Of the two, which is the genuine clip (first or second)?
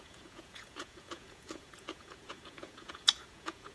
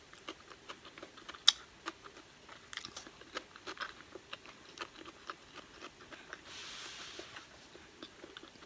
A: second